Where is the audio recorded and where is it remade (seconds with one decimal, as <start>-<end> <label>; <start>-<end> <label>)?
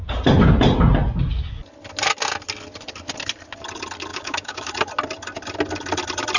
0.0-4.1 recorded; 4.1-4.7 remade; 4.7-6.4 recorded